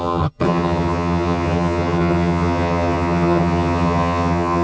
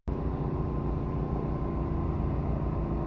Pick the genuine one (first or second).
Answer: second